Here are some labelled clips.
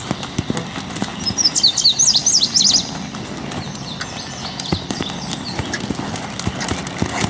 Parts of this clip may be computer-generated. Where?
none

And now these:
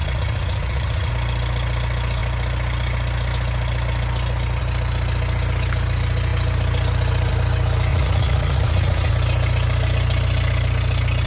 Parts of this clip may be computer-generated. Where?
0.0-1.1 (vocoder, Vocos); 7.9-9.1

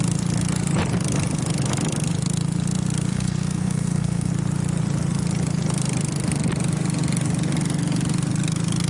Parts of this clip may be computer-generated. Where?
3.1-4.3 (codec, SNAC)

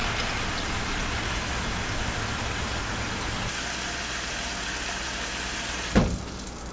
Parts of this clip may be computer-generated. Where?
none

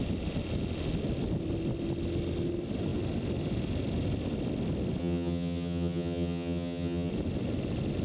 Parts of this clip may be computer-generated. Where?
5.0-7.1 (vocoder, HiFi-GAN)

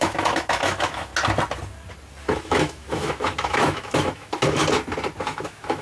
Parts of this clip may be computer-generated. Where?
0.0-1.1 (autoencoder, DAC-VAE); 2.2-4.6; 5.2-5.8